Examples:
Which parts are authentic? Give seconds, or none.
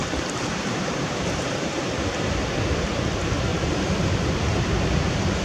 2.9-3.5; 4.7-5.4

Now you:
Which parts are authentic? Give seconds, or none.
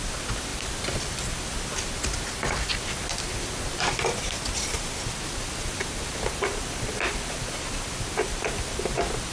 0.0-9.3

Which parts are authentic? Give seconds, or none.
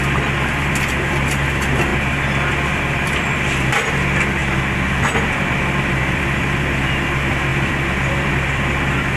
1.9-2.7; 4.4-6.0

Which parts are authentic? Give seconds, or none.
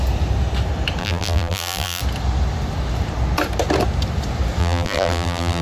0.0-1.0; 2.0-4.6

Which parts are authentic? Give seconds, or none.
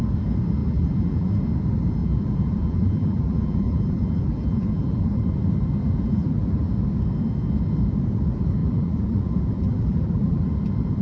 0.0-0.6; 1.3-2.0; 5.2-5.8; 6.7-8.6; 10.5-11.0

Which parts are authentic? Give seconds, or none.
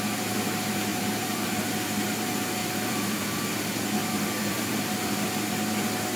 0.0-0.9; 1.5-2.6; 3.3-4.0; 5.7-6.2